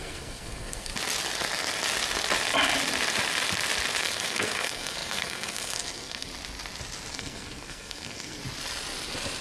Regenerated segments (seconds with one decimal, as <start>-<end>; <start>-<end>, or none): 0.0-0.9; 4.0-6.3; 7.1-8.4